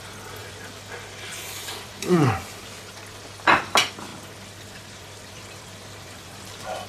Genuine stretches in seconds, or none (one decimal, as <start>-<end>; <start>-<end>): 0.0-0.4; 2.6-4.1; 6.4-6.9